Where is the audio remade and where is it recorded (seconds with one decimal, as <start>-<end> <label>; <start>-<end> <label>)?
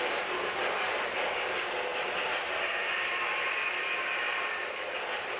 0.0-1.9 recorded; 1.9-5.4 remade